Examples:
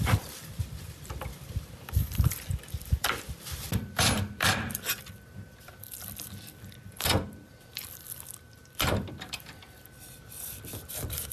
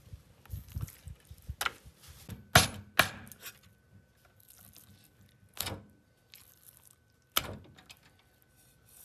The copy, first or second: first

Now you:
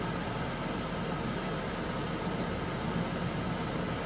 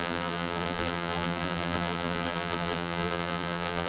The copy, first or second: second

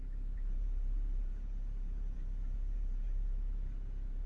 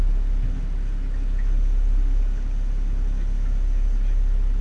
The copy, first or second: first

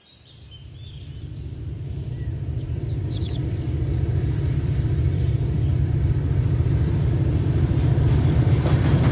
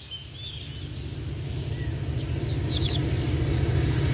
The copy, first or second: first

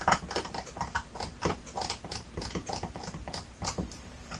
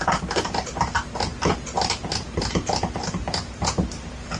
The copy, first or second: first